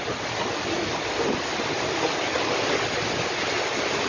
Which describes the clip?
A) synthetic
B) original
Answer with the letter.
B